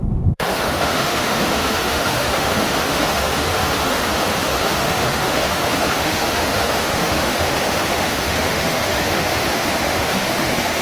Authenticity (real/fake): fake